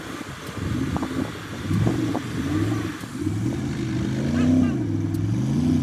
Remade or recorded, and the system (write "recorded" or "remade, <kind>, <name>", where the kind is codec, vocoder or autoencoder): recorded